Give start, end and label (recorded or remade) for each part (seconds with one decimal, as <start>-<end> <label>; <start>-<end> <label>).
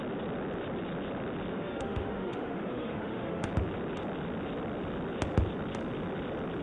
0.0-1.5 recorded; 1.5-3.5 remade; 3.5-6.6 recorded